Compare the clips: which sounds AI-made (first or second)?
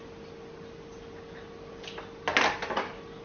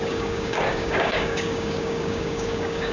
second